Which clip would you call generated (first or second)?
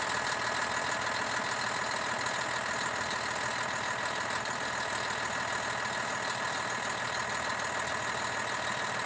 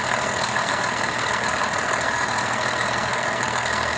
second